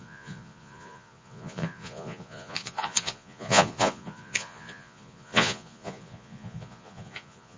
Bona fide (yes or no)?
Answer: no